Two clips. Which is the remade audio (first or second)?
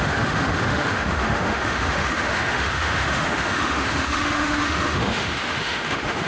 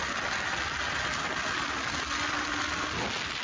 first